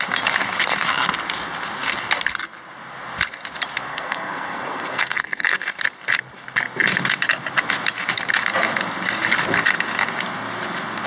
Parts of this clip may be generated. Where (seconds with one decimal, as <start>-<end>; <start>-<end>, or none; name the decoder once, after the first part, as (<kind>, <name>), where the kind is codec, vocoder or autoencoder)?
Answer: 3.9-5.7 (codec, SNAC)